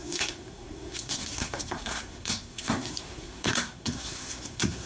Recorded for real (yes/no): no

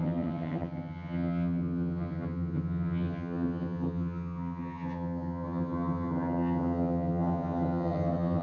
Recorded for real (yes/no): no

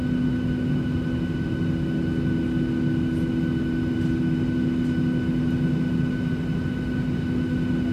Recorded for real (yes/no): yes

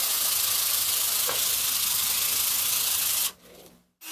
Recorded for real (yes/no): no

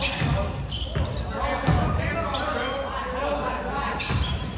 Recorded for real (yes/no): yes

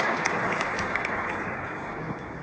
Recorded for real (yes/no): no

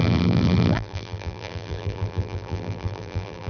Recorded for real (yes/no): no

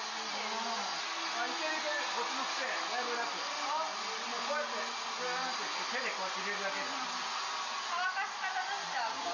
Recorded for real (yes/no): yes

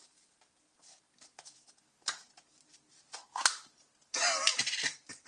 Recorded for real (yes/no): yes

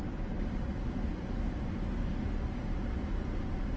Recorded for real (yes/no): yes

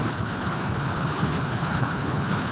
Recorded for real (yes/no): no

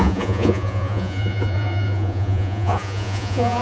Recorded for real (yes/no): no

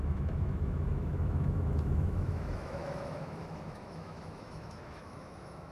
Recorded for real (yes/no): no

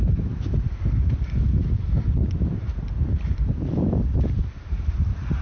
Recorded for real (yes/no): yes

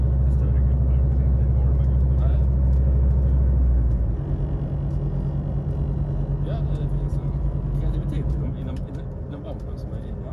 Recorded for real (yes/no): yes